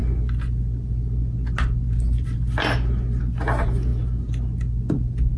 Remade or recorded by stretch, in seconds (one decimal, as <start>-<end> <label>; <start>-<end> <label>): 0.0-5.4 recorded